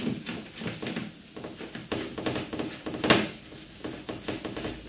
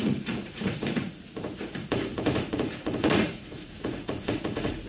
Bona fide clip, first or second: first